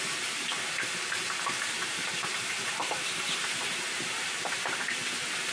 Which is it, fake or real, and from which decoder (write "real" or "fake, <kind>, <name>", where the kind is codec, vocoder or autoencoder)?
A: fake, vocoder, BigVGAN v2